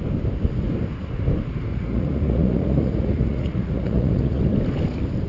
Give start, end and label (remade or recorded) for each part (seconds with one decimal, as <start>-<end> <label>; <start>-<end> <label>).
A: 0.0-1.7 recorded; 1.7-4.4 remade; 4.4-5.3 recorded